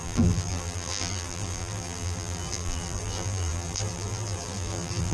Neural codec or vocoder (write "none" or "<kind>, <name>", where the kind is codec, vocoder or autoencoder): vocoder, BigVGAN v2